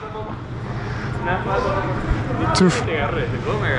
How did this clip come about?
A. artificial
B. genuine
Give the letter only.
B